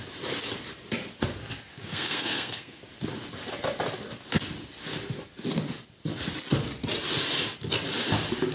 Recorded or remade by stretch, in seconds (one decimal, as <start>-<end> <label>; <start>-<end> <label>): 0.0-1.7 recorded; 1.7-2.8 remade; 2.8-8.5 recorded